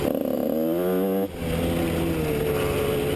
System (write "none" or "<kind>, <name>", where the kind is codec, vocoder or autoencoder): none